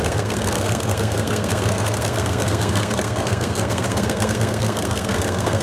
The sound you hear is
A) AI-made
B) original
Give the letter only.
A